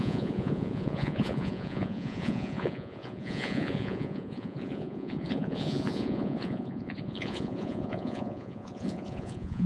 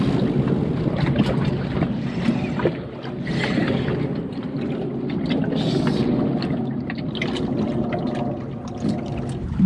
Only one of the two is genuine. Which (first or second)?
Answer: second